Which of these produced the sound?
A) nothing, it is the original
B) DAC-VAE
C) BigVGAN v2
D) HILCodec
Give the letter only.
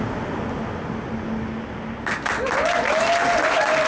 A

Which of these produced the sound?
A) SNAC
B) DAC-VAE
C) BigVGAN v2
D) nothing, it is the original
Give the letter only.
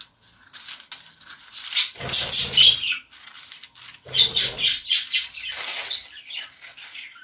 D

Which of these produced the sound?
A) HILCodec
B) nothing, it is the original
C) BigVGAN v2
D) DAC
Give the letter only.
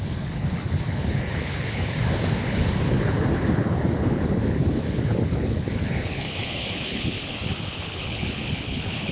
A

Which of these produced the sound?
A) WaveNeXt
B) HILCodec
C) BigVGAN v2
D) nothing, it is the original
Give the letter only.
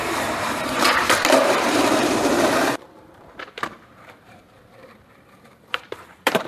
C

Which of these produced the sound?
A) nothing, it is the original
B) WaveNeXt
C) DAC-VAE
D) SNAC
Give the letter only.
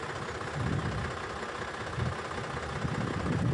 A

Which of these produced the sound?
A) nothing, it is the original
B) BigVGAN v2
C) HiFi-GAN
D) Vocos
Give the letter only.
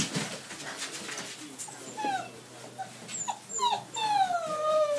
A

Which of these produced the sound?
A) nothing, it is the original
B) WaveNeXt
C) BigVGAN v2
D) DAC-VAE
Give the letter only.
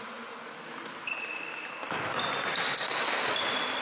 A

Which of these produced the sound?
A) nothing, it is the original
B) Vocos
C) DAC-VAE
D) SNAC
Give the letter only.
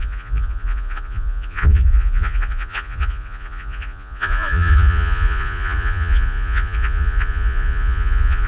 B